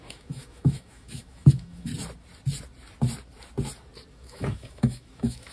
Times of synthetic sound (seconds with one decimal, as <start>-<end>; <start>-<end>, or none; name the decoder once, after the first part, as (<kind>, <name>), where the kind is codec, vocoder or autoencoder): 0.0-1.9 (autoencoder, DAC-VAE); 4.1-5.5